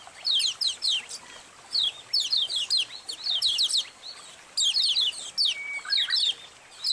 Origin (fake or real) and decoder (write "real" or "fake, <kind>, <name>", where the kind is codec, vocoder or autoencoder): real